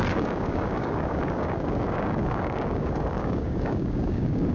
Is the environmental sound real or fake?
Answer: fake